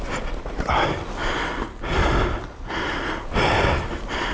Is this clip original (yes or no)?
yes